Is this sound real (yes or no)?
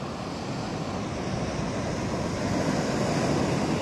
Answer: yes